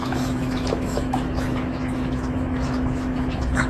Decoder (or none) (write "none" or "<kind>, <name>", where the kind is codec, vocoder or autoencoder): autoencoder, DAC-VAE